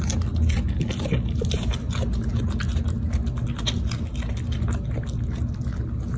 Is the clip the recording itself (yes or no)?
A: yes